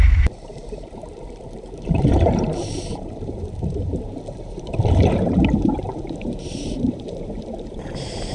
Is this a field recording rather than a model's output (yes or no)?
no